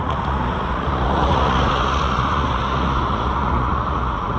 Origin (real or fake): fake